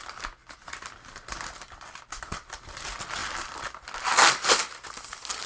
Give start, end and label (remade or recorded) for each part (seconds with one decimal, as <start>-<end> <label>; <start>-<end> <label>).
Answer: 0.0-5.5 recorded